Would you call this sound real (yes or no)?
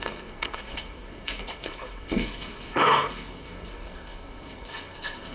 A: no